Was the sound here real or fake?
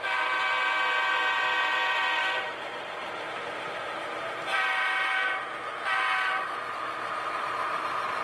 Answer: fake